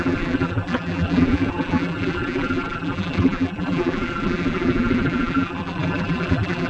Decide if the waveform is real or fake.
fake